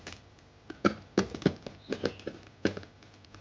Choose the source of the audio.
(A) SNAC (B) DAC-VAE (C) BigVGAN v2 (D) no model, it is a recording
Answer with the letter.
D